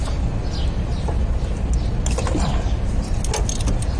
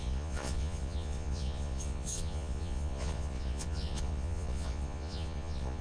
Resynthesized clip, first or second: second